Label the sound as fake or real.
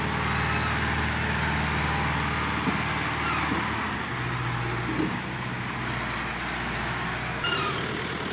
real